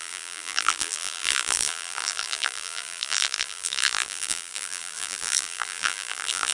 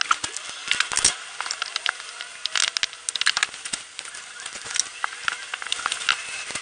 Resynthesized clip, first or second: first